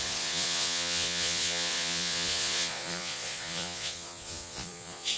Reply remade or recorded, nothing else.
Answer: remade